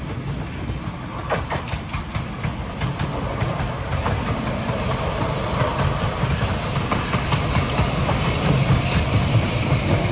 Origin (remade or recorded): recorded